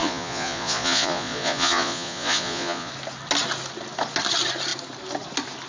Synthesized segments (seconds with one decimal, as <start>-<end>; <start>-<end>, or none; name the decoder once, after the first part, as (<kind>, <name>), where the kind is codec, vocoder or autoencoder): 0.0-2.9 (vocoder, Vocos)